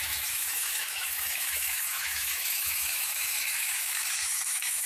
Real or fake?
fake